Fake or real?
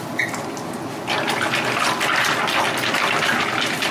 real